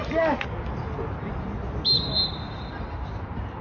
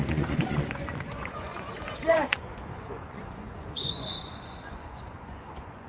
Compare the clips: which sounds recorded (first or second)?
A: first